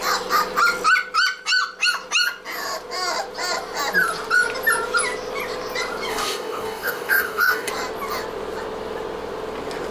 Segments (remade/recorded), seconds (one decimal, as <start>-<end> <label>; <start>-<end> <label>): 0.0-6.1 recorded; 6.1-7.7 remade; 7.7-9.9 recorded